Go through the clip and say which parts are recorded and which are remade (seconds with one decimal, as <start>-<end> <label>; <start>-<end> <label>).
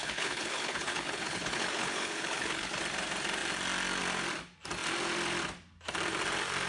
0.0-2.8 remade; 2.8-6.7 recorded